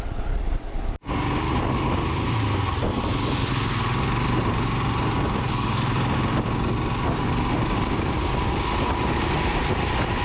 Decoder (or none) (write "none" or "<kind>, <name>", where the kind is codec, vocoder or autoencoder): none